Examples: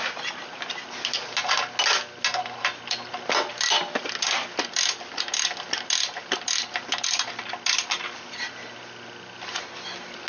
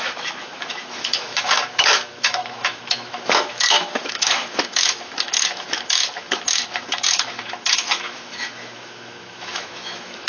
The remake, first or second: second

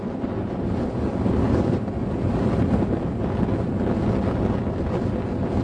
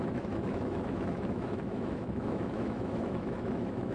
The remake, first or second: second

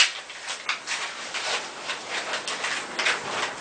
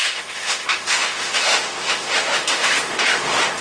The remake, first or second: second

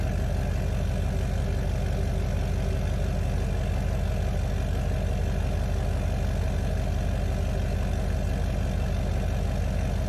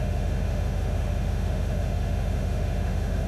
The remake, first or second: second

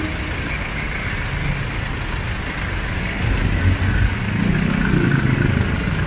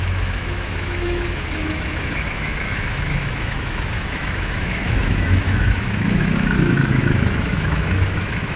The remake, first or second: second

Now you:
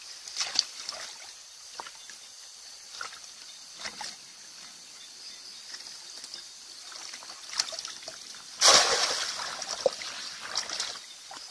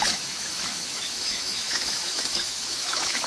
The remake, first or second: second